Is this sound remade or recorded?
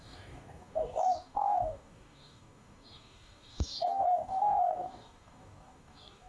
remade